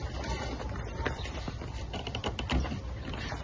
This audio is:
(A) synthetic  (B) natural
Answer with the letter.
B